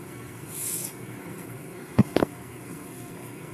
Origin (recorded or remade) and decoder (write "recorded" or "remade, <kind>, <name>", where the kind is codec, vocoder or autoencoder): remade, codec, SNAC